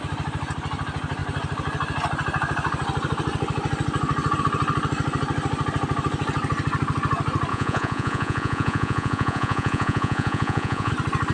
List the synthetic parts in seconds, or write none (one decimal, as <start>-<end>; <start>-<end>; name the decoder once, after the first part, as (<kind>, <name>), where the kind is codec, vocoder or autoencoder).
7.5-10.9 (vocoder, Vocos)